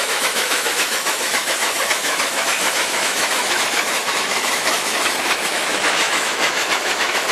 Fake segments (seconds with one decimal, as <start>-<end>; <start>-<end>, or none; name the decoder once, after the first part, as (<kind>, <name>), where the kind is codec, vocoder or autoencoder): 0.0-7.3 (autoencoder, DAC-VAE)